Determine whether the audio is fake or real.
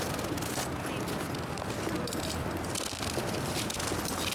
real